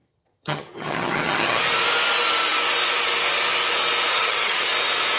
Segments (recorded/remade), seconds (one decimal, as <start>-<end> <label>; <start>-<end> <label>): 0.0-1.6 remade; 1.6-4.1 recorded; 4.1-4.7 remade; 4.7-5.2 recorded